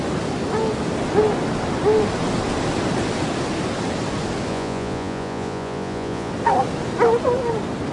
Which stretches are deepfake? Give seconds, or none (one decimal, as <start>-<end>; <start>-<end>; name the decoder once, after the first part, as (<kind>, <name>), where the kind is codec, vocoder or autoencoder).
4.5-6.3 (vocoder, Vocos)